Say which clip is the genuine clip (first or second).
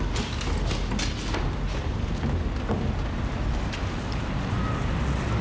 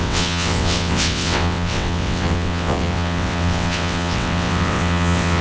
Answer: first